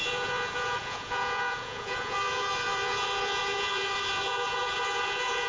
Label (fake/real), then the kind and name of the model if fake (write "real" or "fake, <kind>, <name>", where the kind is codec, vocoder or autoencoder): fake, vocoder, Vocos